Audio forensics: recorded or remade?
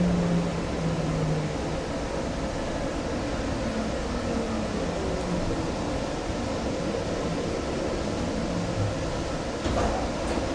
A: recorded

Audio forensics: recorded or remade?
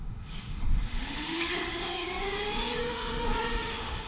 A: remade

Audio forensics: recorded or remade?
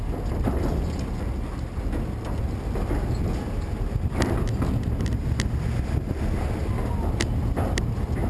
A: recorded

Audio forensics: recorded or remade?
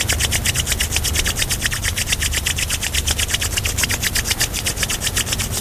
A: recorded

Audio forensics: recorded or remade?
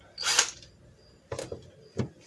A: recorded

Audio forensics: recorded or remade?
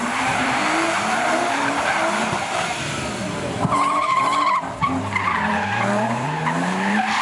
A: remade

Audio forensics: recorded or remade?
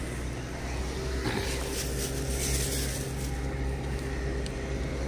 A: recorded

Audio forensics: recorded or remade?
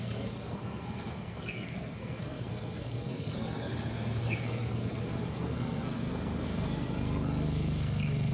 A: remade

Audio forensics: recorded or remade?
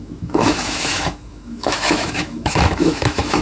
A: remade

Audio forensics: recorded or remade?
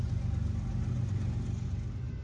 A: recorded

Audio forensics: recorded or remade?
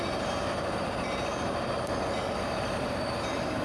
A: remade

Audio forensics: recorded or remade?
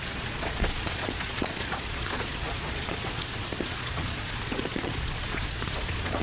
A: remade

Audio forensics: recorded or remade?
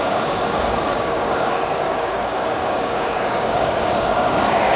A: remade